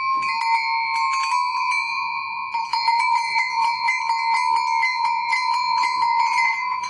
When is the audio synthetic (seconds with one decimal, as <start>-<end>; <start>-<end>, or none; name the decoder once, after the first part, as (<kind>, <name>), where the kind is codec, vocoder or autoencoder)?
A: 1.5-4.0 (vocoder, Vocos); 4.9-6.9